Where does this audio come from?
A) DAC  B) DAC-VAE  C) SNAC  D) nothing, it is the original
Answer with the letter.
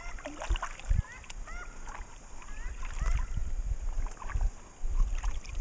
D